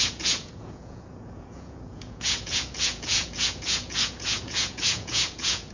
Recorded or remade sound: remade